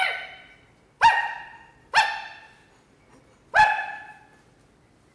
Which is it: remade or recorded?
recorded